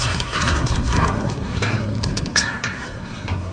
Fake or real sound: fake